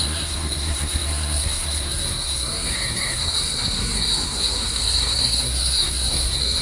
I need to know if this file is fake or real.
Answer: fake